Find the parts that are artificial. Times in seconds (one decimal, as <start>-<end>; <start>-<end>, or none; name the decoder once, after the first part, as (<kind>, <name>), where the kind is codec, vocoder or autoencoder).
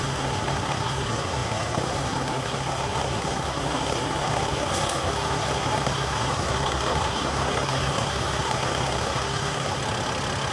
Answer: 0.0-9.8 (codec, SNAC)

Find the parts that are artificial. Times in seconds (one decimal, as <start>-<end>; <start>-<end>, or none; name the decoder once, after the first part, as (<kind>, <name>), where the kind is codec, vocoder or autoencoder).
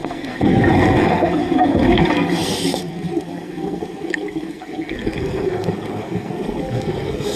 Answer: 0.0-7.4 (codec, SNAC)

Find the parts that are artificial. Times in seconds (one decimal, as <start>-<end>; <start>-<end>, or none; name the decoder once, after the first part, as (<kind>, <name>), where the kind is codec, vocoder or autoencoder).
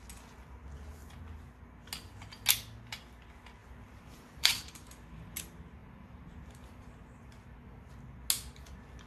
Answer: 1.0-1.6 (vocoder, BigVGAN v2); 3.6-5.3; 5.8-7.8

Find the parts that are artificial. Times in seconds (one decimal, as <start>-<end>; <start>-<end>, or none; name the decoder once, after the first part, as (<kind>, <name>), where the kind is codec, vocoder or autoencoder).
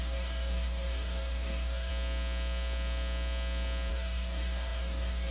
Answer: 0.0-1.9 (codec, DAC); 3.9-5.3